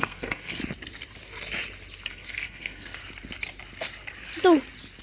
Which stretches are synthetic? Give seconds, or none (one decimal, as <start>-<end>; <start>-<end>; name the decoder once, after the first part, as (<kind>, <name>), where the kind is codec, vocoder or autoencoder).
0.0-0.6 (codec, SNAC); 2.1-3.0